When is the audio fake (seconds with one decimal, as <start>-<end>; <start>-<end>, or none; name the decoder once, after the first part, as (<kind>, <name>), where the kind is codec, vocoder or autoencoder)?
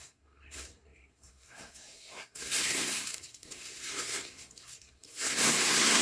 0.0-6.0 (codec, SNAC)